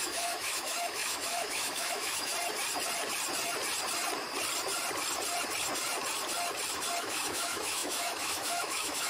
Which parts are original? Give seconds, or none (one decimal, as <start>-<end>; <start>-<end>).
2.3-7.0